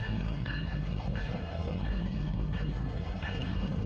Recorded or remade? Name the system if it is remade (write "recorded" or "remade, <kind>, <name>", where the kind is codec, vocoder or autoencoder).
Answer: remade, codec, SNAC